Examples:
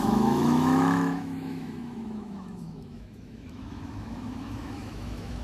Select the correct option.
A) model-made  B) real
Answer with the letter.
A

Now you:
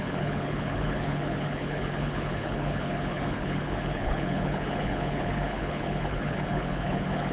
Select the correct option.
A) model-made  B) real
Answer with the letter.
A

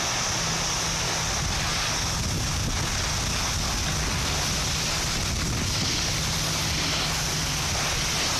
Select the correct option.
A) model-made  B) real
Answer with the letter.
B